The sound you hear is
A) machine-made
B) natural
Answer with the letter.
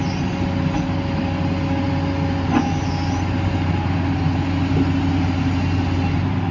B